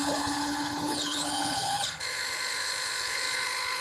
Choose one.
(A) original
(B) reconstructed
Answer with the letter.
B